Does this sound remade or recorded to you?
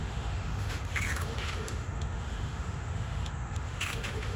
remade